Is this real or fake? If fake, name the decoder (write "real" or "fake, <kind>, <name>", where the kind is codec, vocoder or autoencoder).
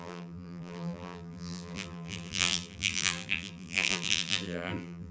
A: fake, vocoder, BigVGAN v2